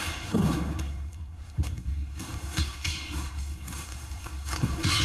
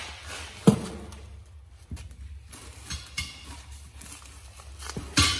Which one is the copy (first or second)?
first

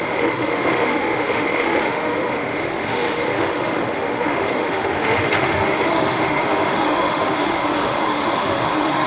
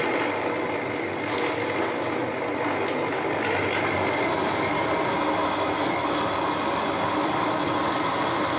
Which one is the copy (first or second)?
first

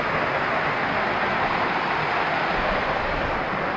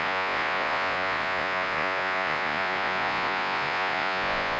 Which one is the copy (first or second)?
second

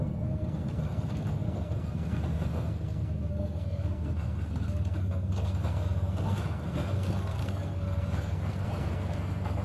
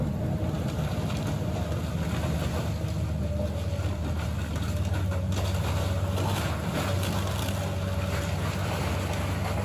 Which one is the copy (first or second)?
first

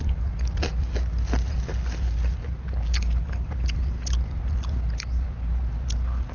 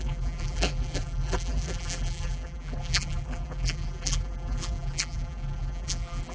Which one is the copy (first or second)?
second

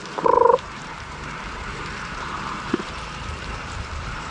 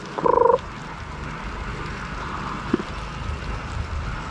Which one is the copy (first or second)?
first